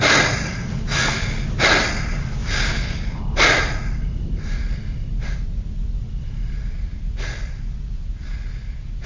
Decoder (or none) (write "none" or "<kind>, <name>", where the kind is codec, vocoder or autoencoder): none